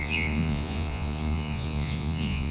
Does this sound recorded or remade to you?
remade